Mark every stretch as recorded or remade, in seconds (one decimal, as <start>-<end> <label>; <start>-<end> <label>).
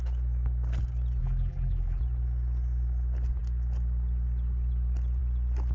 0.0-1.2 recorded; 1.2-2.0 remade; 2.0-5.7 recorded